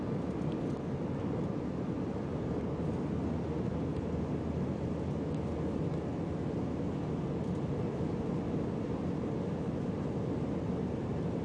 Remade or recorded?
recorded